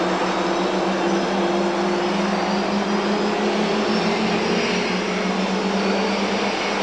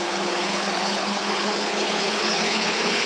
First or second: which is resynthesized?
second